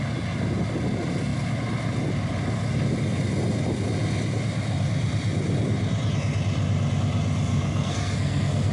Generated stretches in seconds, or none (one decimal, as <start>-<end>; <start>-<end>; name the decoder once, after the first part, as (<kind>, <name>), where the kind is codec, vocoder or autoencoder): 7.5-8.7 (codec, SNAC)